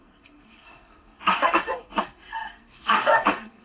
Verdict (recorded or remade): remade